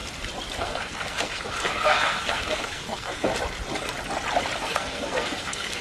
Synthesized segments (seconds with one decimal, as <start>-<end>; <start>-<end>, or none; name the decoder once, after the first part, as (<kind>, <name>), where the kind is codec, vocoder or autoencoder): 0.6-3.3 (codec, SNAC); 4.6-5.8